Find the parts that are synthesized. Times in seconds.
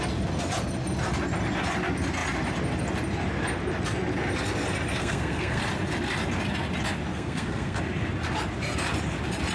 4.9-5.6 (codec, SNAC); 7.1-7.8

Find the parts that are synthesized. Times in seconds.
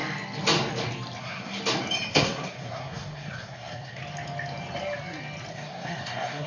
1.2-1.6 (codec, SNAC); 2.1-4.0; 5.5-6.5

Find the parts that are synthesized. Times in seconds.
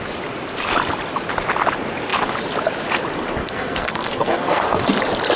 3.4-4.9 (codec, SNAC)